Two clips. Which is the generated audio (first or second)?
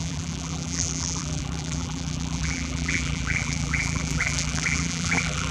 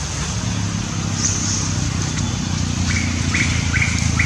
first